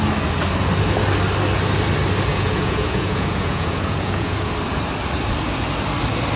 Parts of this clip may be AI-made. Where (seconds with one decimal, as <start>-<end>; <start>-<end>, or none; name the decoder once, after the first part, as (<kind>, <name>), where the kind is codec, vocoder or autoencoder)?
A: 2.3-4.5 (vocoder, Vocos)